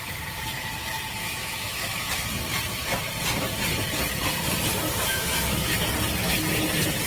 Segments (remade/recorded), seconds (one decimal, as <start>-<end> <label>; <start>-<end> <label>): 0.0-1.2 recorded; 1.2-2.1 remade; 2.1-5.1 recorded; 5.1-5.8 remade; 5.8-7.1 recorded

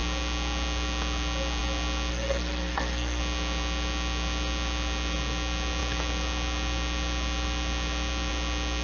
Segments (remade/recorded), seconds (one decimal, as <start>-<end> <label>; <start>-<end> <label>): 0.0-2.1 recorded; 2.1-3.2 remade; 3.2-8.8 recorded

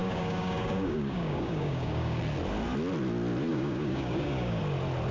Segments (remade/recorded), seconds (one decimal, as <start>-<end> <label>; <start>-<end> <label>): 0.0-2.2 remade; 2.2-3.5 recorded; 3.5-4.6 remade; 4.6-5.1 recorded

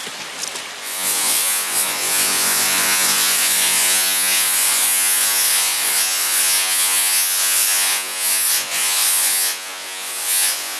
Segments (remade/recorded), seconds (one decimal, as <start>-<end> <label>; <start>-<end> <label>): 0.0-0.8 recorded; 0.8-10.8 remade

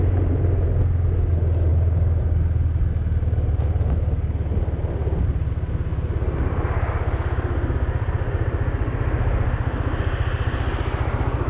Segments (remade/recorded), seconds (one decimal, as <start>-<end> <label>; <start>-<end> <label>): 0.0-11.5 recorded

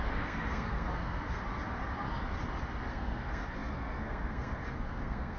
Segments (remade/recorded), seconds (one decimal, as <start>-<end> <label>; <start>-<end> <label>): 0.0-1.5 remade; 1.5-2.9 recorded; 2.9-5.4 remade